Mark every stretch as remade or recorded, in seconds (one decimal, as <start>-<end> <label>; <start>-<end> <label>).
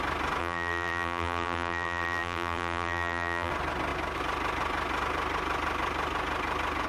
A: 0.0-0.4 recorded; 0.4-3.5 remade; 3.5-6.9 recorded